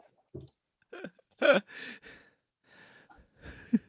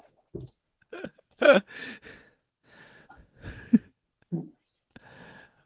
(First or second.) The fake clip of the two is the second